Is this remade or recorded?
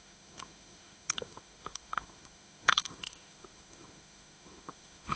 remade